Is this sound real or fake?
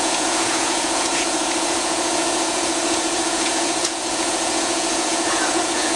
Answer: fake